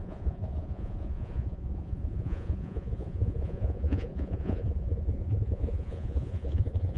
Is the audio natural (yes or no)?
no